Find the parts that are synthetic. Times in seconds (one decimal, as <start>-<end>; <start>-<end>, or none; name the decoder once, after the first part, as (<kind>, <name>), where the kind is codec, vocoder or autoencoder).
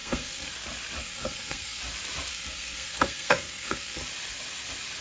0.0-0.5 (codec, SNAC); 1.0-1.8; 2.3-4.0